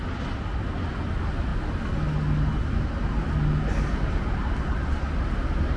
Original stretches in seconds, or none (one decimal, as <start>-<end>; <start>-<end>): 0.0-5.8